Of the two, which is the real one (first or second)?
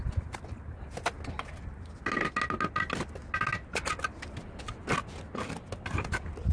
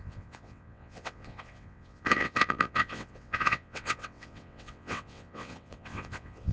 first